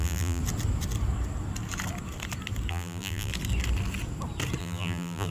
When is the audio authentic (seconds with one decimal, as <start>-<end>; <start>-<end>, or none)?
0.4-2.7; 3.3-4.6